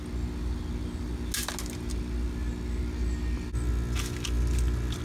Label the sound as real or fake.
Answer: real